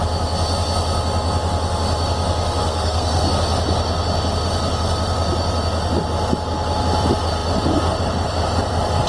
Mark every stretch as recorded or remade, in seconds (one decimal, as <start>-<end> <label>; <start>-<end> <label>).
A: 0.0-2.6 recorded; 2.6-3.3 remade; 3.3-9.1 recorded